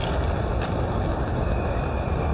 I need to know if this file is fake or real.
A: real